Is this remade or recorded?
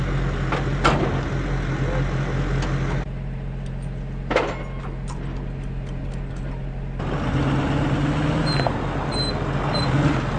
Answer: recorded